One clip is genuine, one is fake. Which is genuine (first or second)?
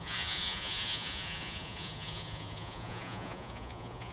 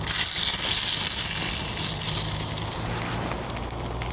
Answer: second